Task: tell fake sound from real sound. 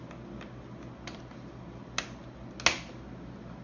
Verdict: real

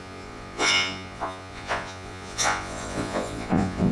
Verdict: fake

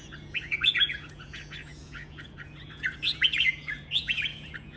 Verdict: fake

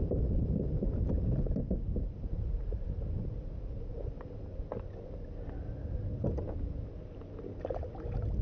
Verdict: real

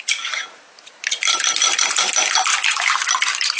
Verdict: real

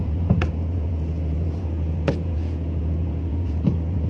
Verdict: fake